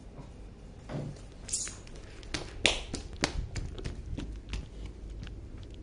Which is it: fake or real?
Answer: real